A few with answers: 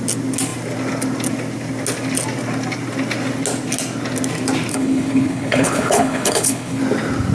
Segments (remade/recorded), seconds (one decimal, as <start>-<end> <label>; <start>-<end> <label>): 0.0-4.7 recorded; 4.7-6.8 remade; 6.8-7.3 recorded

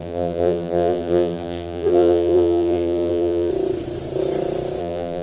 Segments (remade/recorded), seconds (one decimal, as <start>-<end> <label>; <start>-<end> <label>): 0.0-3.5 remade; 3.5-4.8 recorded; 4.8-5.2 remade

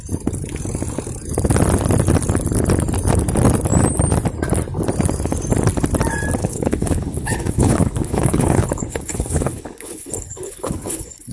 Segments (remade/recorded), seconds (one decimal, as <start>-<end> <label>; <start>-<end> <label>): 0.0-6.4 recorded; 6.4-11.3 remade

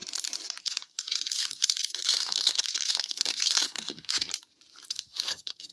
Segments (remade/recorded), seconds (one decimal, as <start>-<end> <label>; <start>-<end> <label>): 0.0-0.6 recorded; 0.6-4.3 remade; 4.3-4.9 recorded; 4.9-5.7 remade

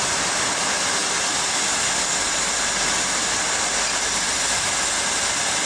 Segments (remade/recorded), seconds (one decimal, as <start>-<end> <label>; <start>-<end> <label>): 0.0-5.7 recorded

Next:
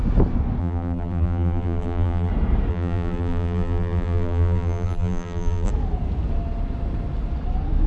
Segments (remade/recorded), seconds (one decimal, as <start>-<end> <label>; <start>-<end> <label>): 0.0-0.6 recorded; 0.6-2.3 remade; 2.3-2.7 recorded; 2.7-5.7 remade; 5.7-7.9 recorded